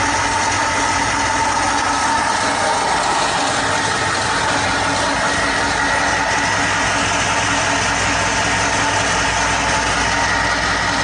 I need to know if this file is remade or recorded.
recorded